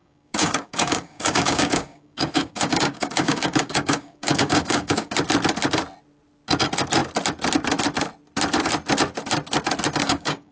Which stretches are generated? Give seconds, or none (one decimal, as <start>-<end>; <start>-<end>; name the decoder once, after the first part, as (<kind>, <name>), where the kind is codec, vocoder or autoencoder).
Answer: 0.0-5.1 (codec, DAC); 10.0-10.5